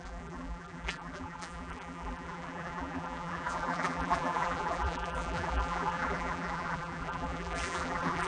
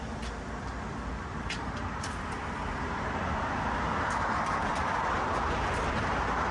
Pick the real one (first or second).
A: second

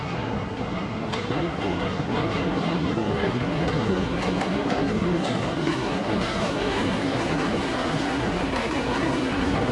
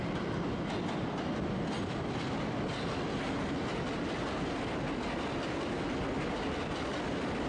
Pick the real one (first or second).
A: second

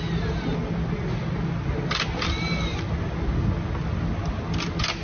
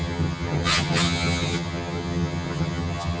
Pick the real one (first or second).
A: first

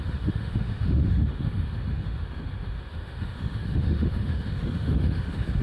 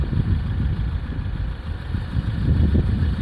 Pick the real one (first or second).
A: second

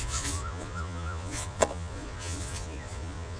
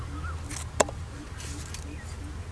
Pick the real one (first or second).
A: second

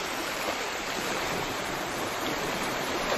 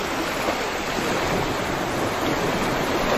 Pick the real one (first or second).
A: second